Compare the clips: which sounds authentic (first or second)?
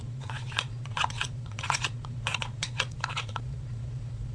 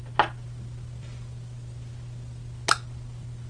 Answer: second